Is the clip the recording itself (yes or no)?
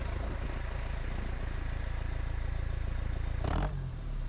yes